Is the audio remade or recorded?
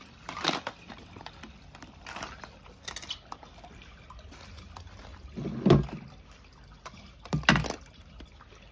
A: recorded